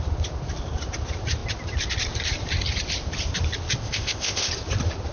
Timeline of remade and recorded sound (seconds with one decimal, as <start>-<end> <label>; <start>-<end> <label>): 0.0-3.8 recorded; 3.8-4.5 remade; 4.5-5.1 recorded